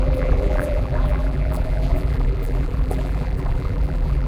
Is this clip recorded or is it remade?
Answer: remade